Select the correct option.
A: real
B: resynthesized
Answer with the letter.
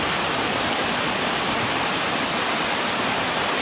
A